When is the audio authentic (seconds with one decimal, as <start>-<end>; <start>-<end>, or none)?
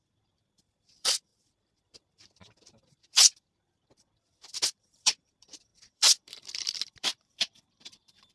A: none